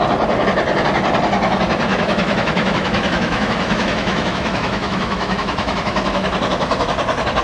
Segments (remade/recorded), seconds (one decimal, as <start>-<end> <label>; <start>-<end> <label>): 0.0-1.9 recorded; 1.9-6.3 remade; 6.3-7.4 recorded